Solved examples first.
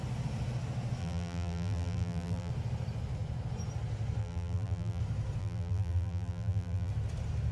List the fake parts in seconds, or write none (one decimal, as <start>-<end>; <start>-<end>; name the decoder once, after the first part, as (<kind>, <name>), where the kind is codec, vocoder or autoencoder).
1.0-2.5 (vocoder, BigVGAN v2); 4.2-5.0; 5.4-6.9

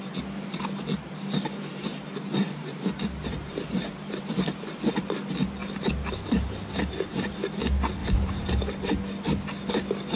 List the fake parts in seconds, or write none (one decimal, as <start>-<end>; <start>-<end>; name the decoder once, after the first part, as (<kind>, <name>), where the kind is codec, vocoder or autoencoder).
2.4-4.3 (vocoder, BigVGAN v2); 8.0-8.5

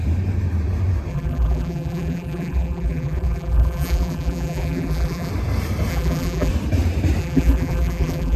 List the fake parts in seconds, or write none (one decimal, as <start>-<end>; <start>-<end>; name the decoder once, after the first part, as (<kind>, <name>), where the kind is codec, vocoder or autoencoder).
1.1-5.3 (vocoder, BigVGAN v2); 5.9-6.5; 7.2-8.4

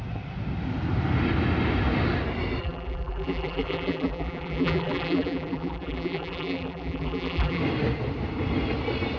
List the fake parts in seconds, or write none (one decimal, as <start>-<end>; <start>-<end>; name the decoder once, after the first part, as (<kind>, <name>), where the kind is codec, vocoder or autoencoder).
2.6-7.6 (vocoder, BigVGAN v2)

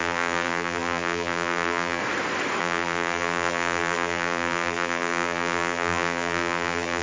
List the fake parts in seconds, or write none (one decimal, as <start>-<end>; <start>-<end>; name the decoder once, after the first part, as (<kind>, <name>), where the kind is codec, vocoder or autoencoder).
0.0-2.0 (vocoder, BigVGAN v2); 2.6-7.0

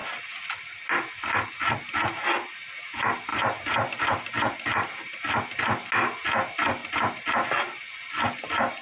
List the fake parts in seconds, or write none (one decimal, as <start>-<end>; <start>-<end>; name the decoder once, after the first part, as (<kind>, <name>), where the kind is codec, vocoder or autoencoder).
3.3-5.2 (vocoder, BigVGAN v2)

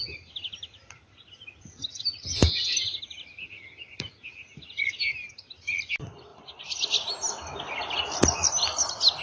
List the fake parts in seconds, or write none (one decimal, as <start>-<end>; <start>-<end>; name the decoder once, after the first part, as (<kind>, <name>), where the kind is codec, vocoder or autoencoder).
1.9-4.1 (vocoder, BigVGAN v2); 6.3-7.1